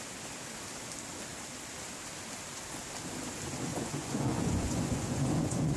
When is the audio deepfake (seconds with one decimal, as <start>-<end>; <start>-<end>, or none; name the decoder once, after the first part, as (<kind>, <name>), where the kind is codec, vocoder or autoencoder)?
3.7-5.8 (vocoder, Vocos)